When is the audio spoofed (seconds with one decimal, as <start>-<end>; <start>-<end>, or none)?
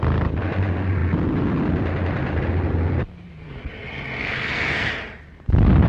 4.2-4.9